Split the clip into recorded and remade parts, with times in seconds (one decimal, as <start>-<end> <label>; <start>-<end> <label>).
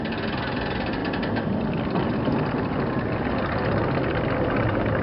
0.0-1.0 recorded; 1.0-2.2 remade; 2.2-5.0 recorded